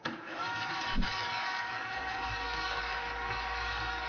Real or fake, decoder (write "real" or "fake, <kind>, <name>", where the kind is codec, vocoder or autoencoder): fake, codec, DAC